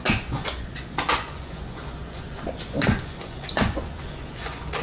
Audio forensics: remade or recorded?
remade